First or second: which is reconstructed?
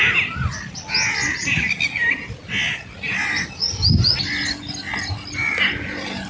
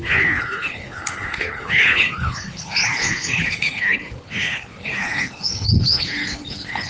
second